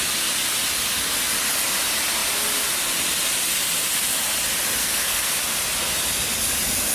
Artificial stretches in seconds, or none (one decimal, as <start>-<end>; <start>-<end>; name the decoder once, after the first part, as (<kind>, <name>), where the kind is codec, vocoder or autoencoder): 4.8-5.3 (codec, SNAC)